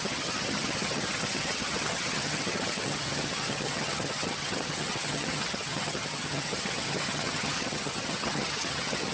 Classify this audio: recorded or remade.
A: remade